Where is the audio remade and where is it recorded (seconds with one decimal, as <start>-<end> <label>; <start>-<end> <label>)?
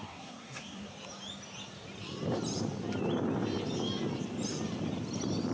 0.0-0.9 remade; 0.9-5.5 recorded